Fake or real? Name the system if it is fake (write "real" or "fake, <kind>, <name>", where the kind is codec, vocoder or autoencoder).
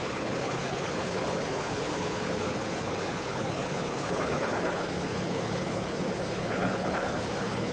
fake, codec, HILCodec